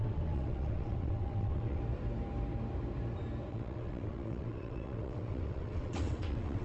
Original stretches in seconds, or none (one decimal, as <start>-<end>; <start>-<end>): 1.8-3.5